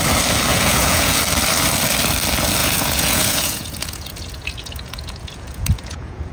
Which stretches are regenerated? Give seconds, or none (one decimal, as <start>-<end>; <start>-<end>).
0.5-1.2; 2.6-6.3